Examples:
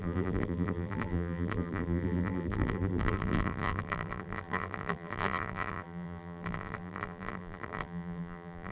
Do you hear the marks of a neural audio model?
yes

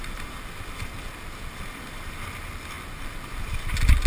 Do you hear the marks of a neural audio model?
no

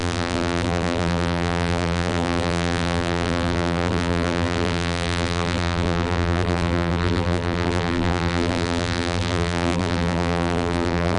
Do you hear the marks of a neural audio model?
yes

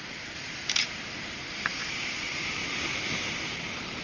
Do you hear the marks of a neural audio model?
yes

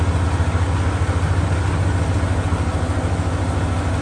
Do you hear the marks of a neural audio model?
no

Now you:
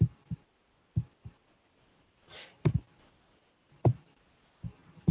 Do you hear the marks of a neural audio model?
no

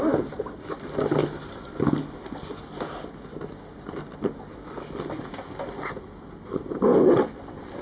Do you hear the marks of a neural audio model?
no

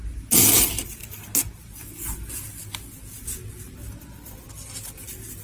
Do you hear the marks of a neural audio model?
no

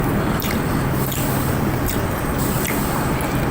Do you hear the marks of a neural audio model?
yes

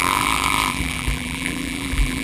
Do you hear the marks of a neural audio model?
yes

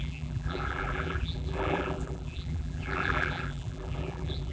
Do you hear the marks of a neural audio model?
yes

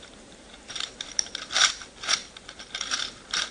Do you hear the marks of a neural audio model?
yes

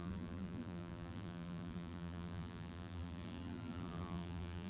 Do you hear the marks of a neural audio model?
yes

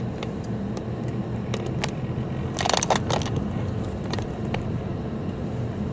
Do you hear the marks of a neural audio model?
no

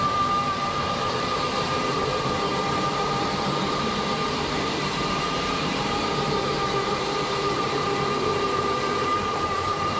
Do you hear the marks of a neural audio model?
yes